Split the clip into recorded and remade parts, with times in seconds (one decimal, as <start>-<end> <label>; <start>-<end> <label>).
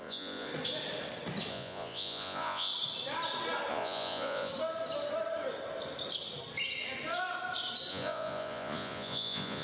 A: 0.0-0.5 remade; 0.5-1.5 recorded; 1.5-2.7 remade; 2.7-3.7 recorded; 3.7-4.5 remade; 4.5-7.9 recorded; 7.9-9.6 remade